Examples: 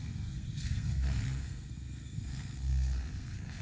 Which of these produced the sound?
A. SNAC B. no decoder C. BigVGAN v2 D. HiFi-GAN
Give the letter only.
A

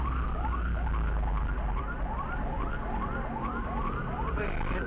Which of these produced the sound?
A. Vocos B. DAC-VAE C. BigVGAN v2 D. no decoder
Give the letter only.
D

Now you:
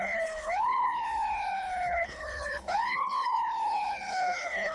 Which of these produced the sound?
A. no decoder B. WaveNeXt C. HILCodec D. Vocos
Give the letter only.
C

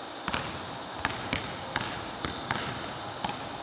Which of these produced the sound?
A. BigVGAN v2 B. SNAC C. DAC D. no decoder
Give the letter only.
D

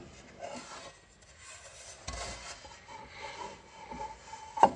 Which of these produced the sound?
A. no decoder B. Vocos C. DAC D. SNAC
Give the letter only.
A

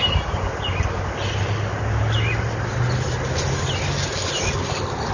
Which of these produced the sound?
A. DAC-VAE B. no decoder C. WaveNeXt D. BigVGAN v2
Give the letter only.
B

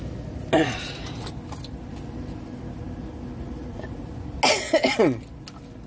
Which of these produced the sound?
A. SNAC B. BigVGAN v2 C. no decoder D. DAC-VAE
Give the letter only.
C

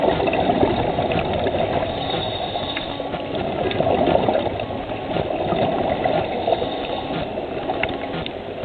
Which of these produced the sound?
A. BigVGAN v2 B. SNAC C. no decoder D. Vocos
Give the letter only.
A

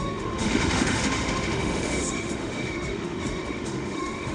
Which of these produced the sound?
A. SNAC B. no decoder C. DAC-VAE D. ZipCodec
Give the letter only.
C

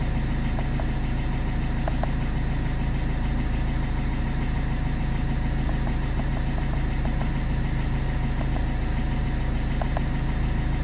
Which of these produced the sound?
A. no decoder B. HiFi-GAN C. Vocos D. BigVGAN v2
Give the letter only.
A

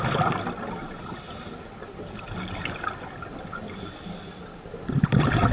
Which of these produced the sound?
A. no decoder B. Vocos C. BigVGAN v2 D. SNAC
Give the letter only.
A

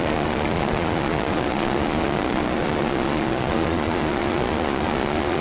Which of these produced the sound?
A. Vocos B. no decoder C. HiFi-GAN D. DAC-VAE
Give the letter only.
A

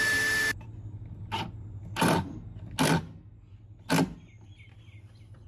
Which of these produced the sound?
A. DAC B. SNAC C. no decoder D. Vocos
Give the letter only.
C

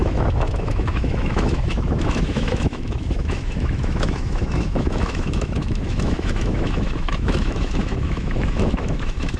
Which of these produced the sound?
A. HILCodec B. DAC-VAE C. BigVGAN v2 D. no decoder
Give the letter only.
B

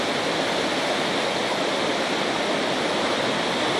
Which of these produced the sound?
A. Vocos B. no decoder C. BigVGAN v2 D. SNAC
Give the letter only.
B